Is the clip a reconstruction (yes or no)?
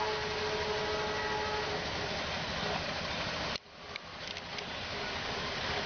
no